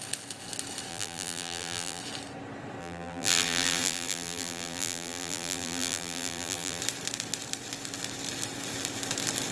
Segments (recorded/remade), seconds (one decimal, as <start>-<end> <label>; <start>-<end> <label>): 0.0-0.9 recorded; 0.9-2.0 remade; 2.0-2.8 recorded; 2.8-6.8 remade; 6.8-9.5 recorded